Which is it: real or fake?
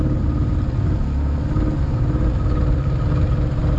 real